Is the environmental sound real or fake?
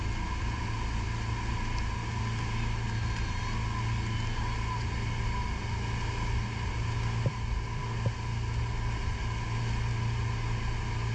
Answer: real